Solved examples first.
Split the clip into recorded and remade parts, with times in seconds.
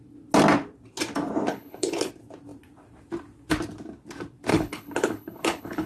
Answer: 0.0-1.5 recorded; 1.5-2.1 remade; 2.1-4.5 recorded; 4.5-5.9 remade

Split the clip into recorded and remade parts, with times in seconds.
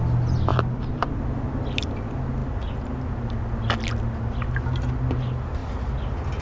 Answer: 0.0-6.4 recorded